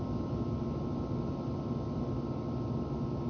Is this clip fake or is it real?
real